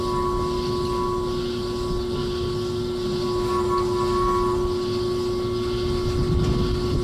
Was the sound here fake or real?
real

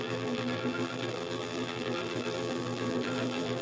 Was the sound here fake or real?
fake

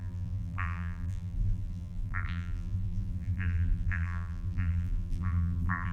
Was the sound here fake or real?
fake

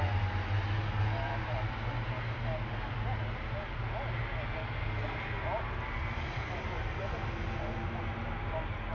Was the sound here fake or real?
real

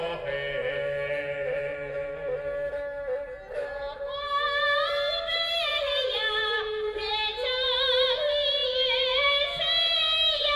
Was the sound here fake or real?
real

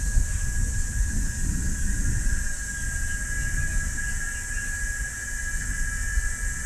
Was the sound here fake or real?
real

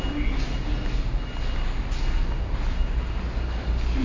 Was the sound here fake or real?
real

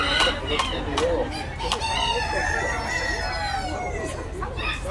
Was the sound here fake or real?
real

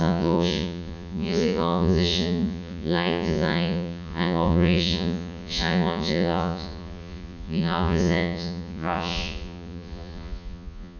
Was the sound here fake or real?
fake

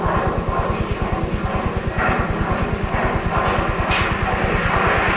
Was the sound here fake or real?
real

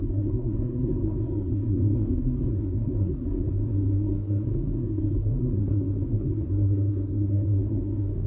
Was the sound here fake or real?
fake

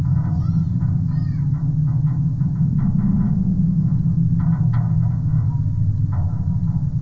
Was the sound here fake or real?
real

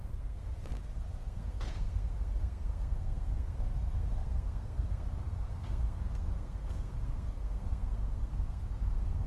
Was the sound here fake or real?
fake